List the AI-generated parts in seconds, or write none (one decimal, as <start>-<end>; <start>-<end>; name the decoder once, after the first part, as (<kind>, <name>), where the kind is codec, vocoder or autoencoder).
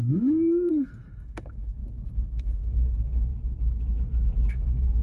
0.0-3.3 (codec, SNAC); 4.5-5.0